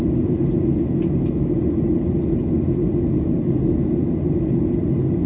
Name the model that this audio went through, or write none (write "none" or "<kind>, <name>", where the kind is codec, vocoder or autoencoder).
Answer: none